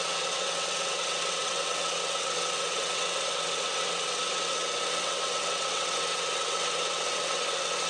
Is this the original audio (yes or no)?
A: no